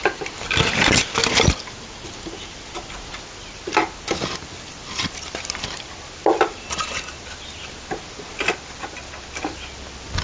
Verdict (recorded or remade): recorded